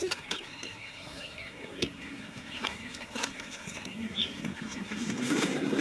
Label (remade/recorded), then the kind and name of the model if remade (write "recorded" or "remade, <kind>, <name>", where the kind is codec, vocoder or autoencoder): remade, codec, SNAC